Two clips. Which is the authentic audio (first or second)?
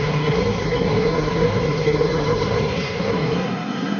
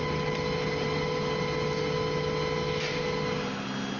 second